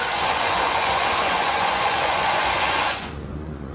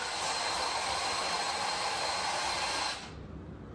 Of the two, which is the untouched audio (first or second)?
second